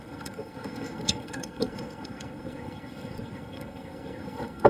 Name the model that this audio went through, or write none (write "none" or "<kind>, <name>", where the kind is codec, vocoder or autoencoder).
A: codec, SNAC